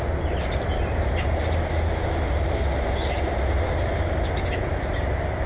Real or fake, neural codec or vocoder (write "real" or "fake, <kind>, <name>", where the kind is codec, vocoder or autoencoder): real